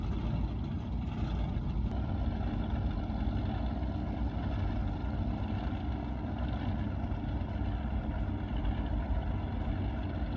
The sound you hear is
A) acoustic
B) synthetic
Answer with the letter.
A